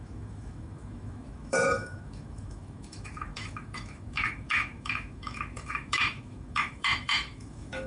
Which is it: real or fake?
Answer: fake